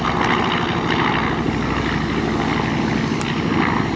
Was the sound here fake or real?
real